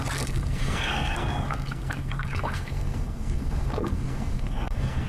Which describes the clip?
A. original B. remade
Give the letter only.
B